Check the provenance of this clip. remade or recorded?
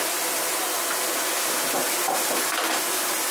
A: recorded